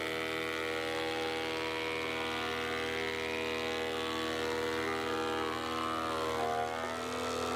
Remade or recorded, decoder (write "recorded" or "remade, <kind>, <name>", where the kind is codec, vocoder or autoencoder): recorded